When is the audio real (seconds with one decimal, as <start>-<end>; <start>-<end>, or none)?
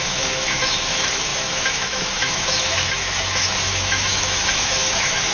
none